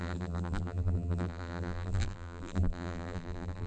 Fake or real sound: fake